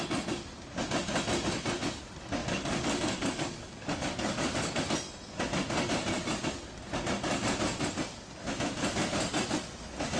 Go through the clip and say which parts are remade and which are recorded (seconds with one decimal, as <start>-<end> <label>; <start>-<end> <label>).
0.0-2.4 recorded; 2.4-4.8 remade; 4.8-10.2 recorded